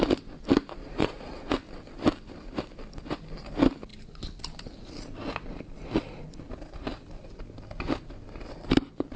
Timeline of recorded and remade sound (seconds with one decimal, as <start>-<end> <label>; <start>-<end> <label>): 0.0-0.8 recorded; 0.8-1.5 remade; 1.5-9.2 recorded